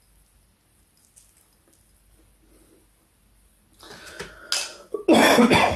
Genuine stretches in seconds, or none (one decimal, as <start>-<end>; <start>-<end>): 0.0-5.8